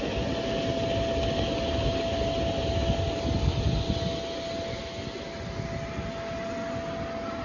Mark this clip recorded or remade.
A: recorded